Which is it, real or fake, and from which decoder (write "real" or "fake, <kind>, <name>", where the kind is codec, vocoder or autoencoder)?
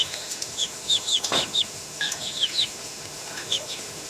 fake, autoencoder, DAC-VAE